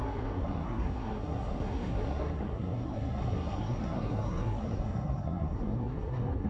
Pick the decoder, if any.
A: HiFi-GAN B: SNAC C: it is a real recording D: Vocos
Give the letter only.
B